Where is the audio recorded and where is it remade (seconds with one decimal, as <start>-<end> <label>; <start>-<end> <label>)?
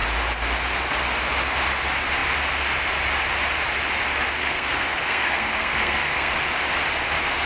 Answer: 0.0-4.4 recorded; 4.4-6.3 remade; 6.3-7.5 recorded